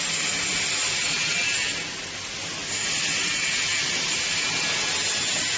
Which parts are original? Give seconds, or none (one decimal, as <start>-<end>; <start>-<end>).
0.0-5.6